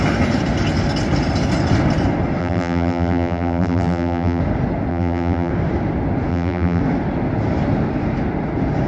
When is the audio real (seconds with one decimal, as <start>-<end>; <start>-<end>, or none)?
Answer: 0.0-2.4; 4.4-4.9; 5.5-6.3; 6.8-8.9